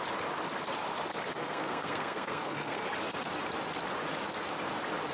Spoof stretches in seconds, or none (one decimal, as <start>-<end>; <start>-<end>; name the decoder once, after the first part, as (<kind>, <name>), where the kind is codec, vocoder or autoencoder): 1.3-2.8 (codec, SNAC)